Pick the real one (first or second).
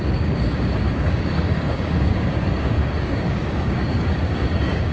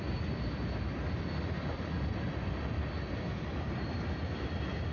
second